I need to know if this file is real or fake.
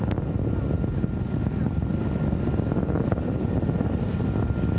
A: real